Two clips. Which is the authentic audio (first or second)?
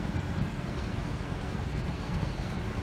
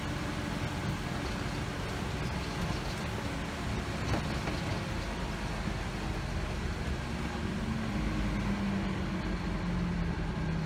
second